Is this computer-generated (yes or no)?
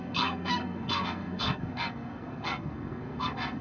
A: yes